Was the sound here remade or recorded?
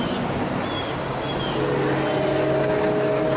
recorded